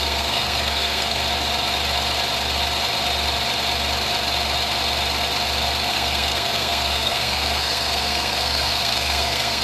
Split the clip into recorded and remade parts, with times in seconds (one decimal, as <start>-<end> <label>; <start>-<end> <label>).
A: 0.0-1.2 remade; 1.2-5.9 recorded; 5.9-9.6 remade